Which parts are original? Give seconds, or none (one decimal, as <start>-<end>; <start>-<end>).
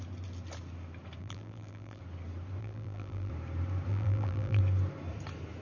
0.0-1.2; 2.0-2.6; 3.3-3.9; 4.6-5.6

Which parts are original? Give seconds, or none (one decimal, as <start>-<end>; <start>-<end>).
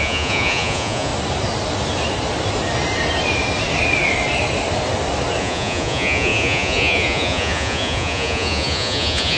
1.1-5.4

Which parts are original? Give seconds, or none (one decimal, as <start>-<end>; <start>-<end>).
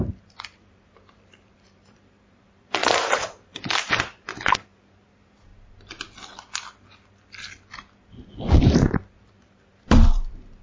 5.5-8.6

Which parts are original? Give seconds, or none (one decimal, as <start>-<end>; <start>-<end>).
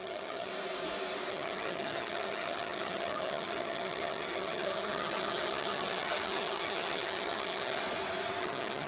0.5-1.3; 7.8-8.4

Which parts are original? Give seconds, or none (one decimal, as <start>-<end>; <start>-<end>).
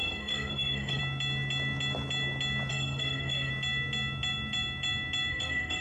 1.0-2.7; 3.5-5.3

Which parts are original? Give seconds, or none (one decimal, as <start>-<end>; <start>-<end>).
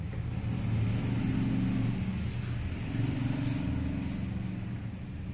0.0-5.3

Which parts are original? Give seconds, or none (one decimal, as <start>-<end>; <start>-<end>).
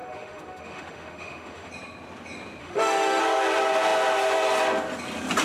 1.7-2.6; 3.2-5.4